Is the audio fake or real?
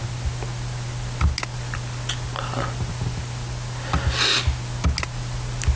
real